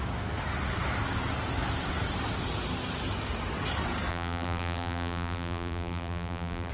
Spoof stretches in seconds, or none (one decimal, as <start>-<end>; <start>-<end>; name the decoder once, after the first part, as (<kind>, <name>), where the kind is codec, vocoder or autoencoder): 4.1-6.7 (vocoder, BigVGAN v2)